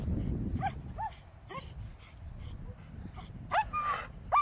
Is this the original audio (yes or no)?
yes